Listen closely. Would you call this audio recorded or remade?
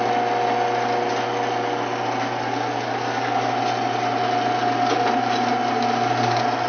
recorded